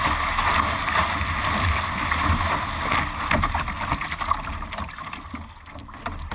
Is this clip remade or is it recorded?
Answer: recorded